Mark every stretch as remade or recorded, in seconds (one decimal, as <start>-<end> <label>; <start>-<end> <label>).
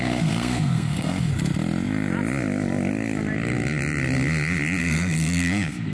0.0-1.3 remade; 1.3-4.8 recorded; 4.8-5.9 remade